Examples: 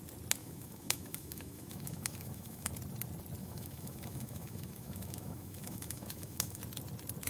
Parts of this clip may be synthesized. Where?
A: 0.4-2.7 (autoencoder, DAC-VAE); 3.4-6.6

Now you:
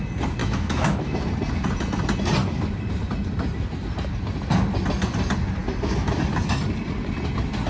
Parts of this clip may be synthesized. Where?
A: 0.4-1.2 (autoencoder, DAC-VAE)

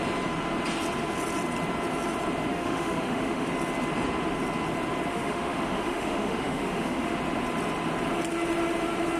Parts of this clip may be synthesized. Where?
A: 2.5-3.5 (autoencoder, DAC-VAE); 5.1-7.2

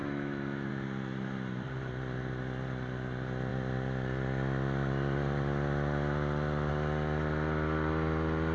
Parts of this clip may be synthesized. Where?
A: 0.0-0.7 (autoencoder, DAC-VAE)